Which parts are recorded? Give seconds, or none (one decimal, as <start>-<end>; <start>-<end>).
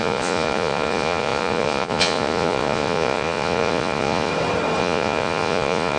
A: 4.3-4.8